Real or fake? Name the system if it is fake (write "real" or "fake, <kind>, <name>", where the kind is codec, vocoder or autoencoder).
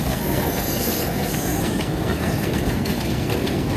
fake, codec, SNAC